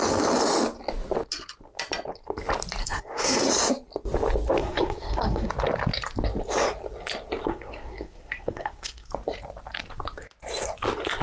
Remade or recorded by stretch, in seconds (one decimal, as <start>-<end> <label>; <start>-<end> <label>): 0.0-2.8 recorded; 2.8-3.5 remade; 3.5-4.6 recorded; 4.6-5.5 remade; 5.5-7.5 recorded; 7.5-9.1 remade; 9.1-11.2 recorded

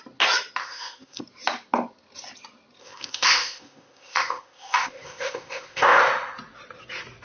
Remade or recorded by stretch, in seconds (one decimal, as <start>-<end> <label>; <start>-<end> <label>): 0.0-0.6 recorded; 0.6-1.2 remade; 1.2-2.8 recorded; 2.8-6.0 remade; 6.0-7.2 recorded

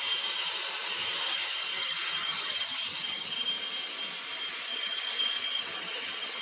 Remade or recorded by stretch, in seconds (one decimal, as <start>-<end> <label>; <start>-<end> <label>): 0.0-1.2 recorded; 1.2-3.5 remade; 3.5-4.7 recorded; 4.7-6.4 remade

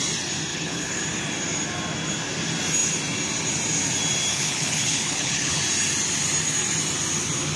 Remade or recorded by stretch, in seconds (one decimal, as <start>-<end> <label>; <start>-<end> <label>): 0.0-0.5 recorded; 0.5-1.0 remade; 1.0-4.3 recorded; 4.3-5.6 remade; 5.6-7.6 recorded

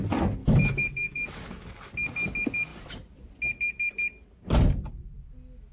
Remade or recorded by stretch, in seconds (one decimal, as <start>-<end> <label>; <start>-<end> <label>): 0.0-0.4 recorded; 0.4-1.5 remade; 1.5-5.7 recorded